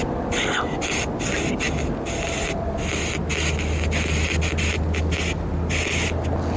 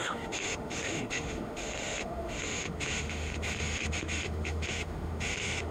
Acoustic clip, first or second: first